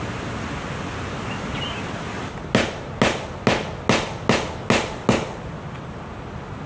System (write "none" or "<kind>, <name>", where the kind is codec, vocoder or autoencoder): none